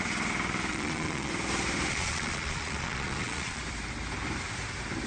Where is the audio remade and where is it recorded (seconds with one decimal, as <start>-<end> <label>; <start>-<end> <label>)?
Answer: 0.0-0.7 recorded; 0.7-1.3 remade; 1.3-1.9 recorded; 1.9-3.6 remade; 3.6-5.1 recorded

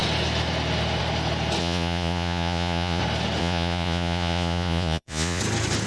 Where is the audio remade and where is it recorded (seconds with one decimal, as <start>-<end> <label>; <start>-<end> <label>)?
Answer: 0.0-1.6 recorded; 1.6-3.0 remade; 3.0-3.4 recorded; 3.4-5.4 remade; 5.4-5.9 recorded

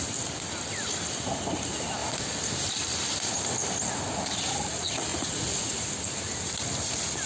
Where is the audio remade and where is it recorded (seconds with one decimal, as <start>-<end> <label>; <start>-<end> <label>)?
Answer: 0.0-5.1 recorded; 5.1-5.9 remade; 5.9-7.3 recorded